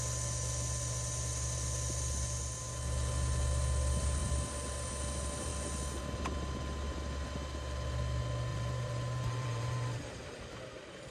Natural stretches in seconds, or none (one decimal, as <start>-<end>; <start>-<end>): 0.0-8.5; 10.2-11.1